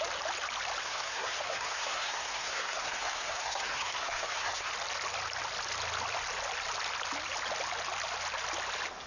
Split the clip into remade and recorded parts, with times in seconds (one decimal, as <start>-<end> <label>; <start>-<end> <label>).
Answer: 0.0-0.8 recorded; 0.8-4.7 remade; 4.7-9.1 recorded